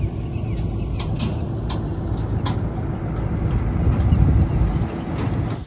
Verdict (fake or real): real